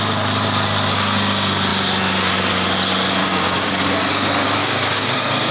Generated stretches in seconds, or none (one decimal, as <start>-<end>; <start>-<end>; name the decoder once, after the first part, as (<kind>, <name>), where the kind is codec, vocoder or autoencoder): 3.2-4.1 (codec, DAC); 4.6-5.5